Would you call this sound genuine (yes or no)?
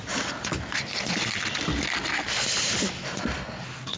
yes